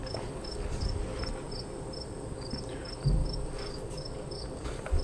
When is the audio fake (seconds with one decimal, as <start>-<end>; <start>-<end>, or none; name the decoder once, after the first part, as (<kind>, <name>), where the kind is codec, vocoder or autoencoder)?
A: 0.0-1.0 (codec, DAC); 3.2-5.0